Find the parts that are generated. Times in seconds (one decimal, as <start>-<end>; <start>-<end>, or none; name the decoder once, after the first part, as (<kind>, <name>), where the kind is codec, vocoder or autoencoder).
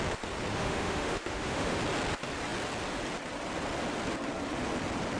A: 0.5-1.8 (autoencoder, DAC-VAE)